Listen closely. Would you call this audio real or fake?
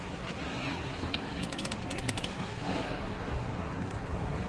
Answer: fake